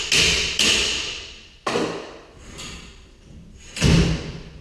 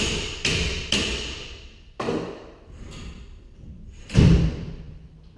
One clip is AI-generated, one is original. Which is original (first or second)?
first